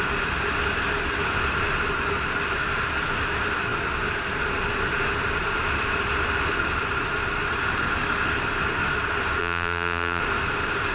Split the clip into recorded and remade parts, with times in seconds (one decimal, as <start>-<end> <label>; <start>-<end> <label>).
0.0-9.4 recorded; 9.4-10.2 remade; 10.2-10.9 recorded